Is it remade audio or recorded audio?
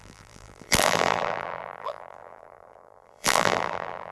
remade